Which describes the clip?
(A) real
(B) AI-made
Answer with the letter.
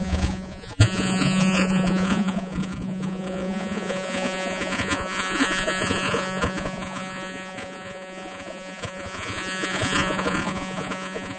B